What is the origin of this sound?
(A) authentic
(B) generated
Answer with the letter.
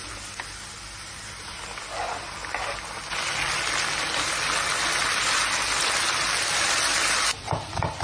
A